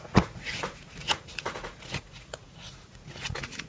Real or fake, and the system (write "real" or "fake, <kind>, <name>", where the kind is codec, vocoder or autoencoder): fake, vocoder, Vocos